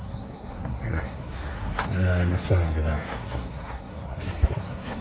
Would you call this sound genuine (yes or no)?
no